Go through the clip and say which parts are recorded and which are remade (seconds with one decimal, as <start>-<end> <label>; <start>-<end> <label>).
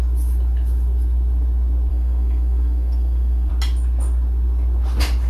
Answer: 0.0-1.9 recorded; 1.9-3.5 remade; 3.5-5.3 recorded